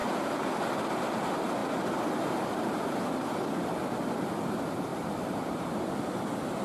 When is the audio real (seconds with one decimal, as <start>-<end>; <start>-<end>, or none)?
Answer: 0.5-4.9; 5.6-6.6